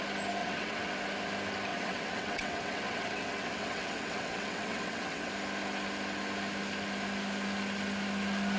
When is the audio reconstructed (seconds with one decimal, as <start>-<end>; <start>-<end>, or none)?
0.4-0.9; 1.7-5.3